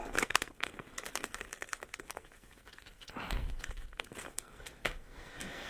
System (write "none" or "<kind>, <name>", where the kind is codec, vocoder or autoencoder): codec, SNAC